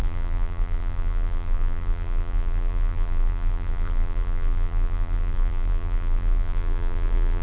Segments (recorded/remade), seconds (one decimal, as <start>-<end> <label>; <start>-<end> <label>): 0.0-7.4 remade